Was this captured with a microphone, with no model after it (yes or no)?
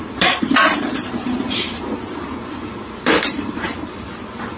no